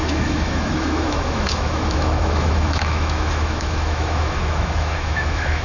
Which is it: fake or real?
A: fake